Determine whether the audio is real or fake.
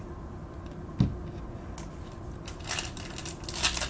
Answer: real